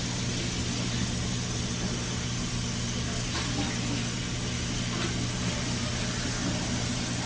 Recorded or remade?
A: recorded